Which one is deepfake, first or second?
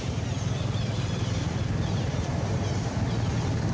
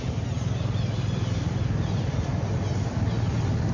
first